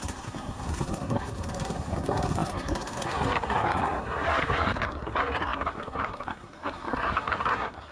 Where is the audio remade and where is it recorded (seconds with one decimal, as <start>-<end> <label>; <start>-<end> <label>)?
0.0-7.9 remade